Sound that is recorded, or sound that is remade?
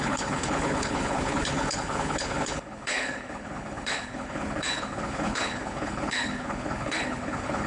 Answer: remade